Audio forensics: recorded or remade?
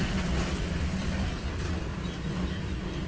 recorded